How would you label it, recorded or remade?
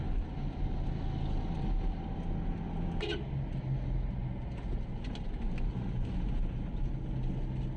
recorded